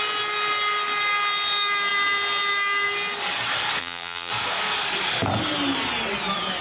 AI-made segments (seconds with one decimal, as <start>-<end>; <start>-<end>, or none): 3.8-4.3